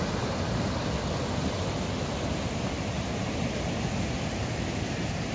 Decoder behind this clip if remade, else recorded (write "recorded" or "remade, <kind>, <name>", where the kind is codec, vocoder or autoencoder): recorded